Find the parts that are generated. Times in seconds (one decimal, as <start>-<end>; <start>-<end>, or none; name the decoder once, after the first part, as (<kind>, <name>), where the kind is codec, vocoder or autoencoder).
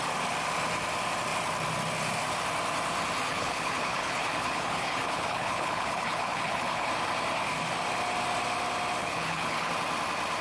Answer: 3.2-6.9 (codec, HILCodec); 9.0-9.7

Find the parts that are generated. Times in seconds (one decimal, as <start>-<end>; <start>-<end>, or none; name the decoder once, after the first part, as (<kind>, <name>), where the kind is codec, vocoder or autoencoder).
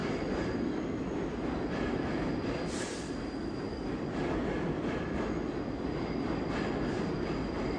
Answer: none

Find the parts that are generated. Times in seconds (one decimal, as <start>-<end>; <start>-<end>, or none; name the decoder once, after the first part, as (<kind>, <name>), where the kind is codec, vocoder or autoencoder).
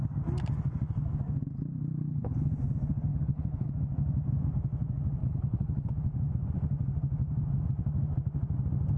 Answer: 1.9-2.5 (codec, HILCodec); 3.1-3.7; 5.2-5.9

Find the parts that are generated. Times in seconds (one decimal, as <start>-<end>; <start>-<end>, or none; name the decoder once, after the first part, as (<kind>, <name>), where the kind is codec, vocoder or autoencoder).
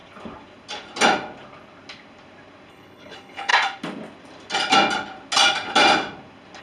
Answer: 2.7-3.5 (codec, HILCodec)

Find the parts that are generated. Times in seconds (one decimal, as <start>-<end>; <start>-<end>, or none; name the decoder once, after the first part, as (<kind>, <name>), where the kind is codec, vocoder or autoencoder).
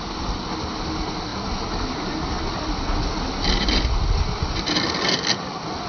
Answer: none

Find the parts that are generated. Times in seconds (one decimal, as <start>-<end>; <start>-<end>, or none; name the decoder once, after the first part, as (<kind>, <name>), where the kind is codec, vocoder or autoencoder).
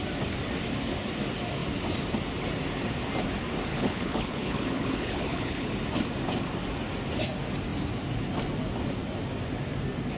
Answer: 3.7-5.7 (codec, HILCodec)